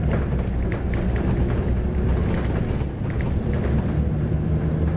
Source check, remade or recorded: recorded